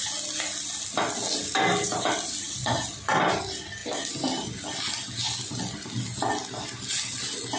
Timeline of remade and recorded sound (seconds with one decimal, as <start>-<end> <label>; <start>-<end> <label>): 0.0-7.6 recorded